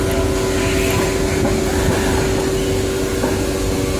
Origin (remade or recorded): recorded